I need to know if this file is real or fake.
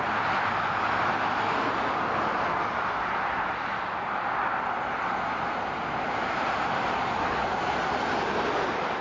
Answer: real